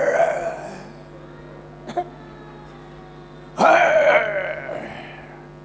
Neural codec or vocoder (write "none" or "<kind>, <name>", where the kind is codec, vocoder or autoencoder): none